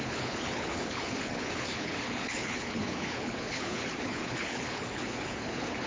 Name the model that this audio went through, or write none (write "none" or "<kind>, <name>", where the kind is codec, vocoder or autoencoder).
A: codec, HILCodec